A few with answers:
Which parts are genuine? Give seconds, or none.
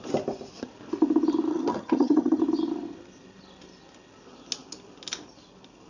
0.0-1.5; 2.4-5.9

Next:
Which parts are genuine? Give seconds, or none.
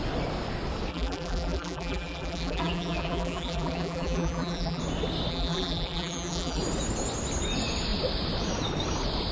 0.0-0.9; 4.8-5.3; 6.6-9.3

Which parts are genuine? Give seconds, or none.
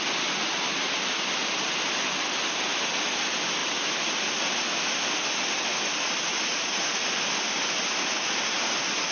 0.0-9.1